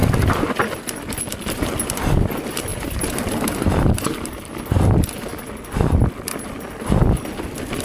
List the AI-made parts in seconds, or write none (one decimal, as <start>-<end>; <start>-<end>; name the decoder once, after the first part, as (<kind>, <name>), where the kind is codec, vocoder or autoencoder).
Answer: 2.7-4.5 (vocoder, BigVGAN v2)